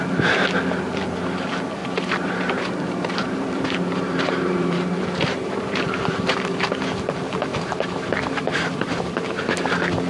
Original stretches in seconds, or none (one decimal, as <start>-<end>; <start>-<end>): 0.0-1.8; 6.5-7.5; 9.5-10.1